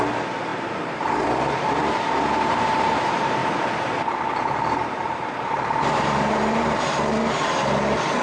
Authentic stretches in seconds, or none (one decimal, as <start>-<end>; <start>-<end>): none

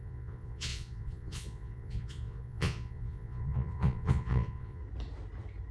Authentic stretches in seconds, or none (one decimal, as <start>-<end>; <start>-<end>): 4.8-5.7

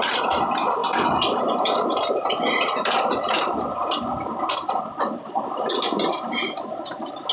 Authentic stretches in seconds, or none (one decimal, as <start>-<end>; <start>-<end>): 0.0-7.3

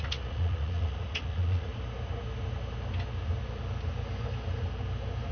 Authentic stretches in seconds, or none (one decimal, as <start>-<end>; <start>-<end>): 1.7-5.3

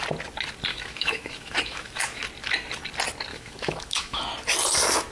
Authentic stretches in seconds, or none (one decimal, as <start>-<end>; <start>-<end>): 0.0-0.7; 2.2-3.3; 4.2-5.1